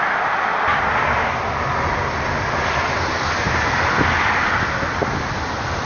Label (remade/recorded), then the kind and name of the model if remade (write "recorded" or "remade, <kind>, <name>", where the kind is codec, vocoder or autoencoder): recorded